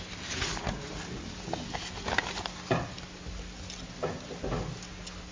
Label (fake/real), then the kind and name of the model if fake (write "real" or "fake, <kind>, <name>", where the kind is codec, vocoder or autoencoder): real